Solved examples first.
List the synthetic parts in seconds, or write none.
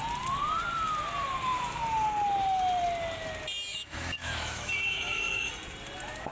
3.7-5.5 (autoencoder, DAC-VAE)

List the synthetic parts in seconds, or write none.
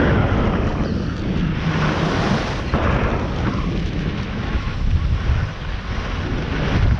3.8-4.9 (autoencoder, DAC-VAE)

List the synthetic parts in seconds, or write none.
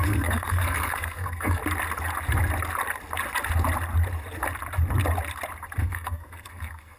0.0-1.6 (codec, SNAC); 5.8-7.0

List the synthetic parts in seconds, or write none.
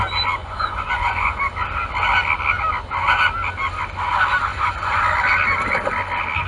0.4-1.4 (vocoder, Vocos); 4.5-5.0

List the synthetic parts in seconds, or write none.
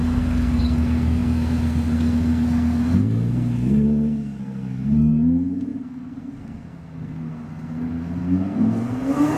0.0-9.4 (codec, SNAC)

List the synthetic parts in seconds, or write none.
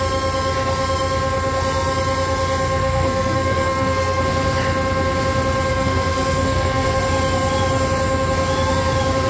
2.8-4.2 (codec, SNAC); 5.7-7.0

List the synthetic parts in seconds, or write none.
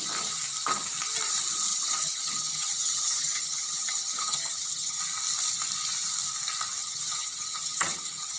1.7-5.0 (vocoder, HiFi-GAN); 6.8-8.4